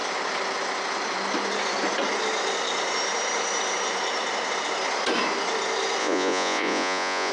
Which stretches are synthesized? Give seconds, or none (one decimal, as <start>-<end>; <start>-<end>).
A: 6.0-7.3